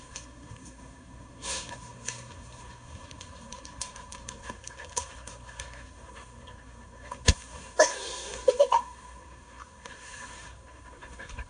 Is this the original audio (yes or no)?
no